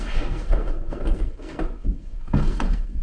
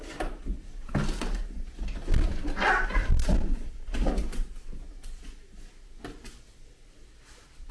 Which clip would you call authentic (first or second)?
second